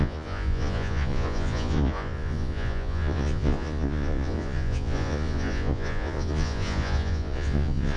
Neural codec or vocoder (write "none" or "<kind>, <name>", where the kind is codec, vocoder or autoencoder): vocoder, Vocos